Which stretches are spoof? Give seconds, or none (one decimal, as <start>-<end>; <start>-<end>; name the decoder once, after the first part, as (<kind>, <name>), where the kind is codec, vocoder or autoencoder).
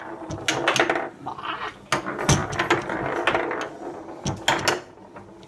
none